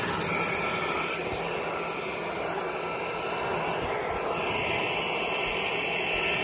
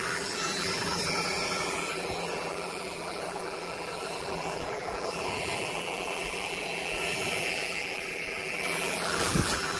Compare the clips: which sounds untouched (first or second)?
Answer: first